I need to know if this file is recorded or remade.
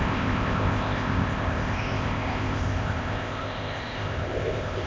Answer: remade